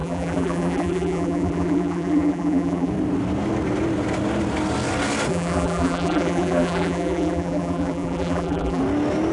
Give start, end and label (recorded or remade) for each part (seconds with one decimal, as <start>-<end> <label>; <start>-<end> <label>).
0.0-2.9 remade; 2.9-5.3 recorded; 5.3-8.8 remade; 8.8-9.3 recorded